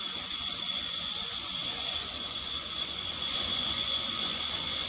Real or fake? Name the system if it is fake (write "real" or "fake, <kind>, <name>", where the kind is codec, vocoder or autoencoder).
fake, vocoder, Vocos